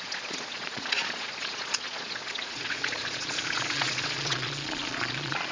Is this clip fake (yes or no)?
yes